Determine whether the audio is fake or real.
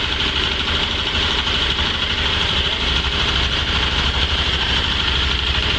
fake